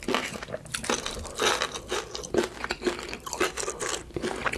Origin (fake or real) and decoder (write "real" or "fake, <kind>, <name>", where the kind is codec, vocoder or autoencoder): real